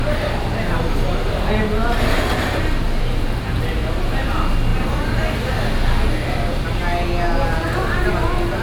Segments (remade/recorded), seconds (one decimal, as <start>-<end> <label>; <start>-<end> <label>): 0.0-8.6 recorded